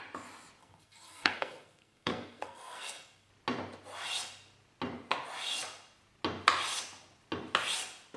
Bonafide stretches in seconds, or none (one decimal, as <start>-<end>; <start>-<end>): 0.0-0.6; 3.3-8.2